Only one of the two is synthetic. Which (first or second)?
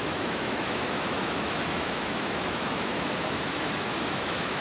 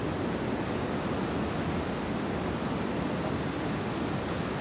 first